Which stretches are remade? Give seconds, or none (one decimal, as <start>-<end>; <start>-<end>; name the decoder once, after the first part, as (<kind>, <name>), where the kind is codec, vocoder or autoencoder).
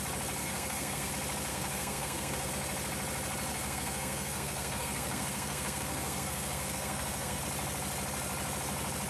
0.4-1.1 (codec, SNAC); 1.5-2.5; 3.5-7.4